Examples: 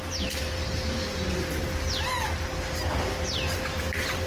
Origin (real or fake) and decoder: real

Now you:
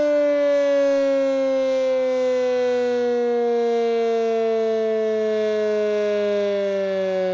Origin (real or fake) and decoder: real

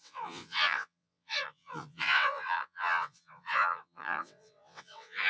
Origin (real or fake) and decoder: fake, vocoder, WaveNeXt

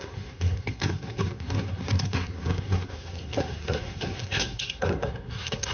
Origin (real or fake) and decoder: fake, codec, SNAC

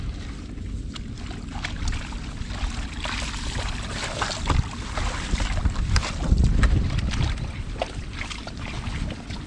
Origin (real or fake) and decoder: real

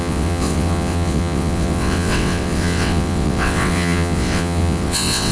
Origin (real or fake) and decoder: fake, vocoder, WaveNeXt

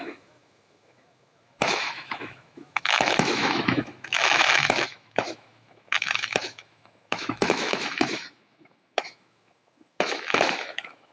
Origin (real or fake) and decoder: fake, autoencoder, DAC-VAE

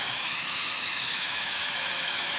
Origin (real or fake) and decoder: fake, autoencoder, DAC-VAE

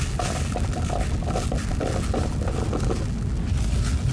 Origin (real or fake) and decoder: real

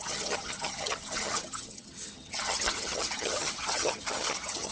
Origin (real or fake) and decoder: fake, vocoder, HiFi-GAN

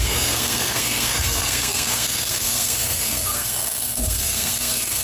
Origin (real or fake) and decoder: fake, codec, SNAC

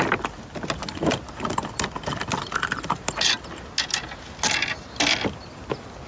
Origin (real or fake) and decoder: real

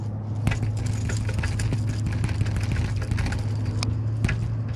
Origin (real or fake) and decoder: real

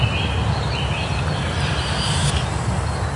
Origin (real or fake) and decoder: real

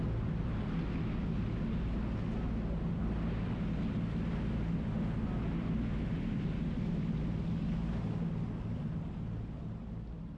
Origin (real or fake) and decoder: real